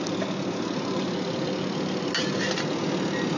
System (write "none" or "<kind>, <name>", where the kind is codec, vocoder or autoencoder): none